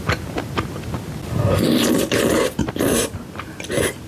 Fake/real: real